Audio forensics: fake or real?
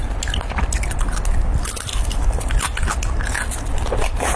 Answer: real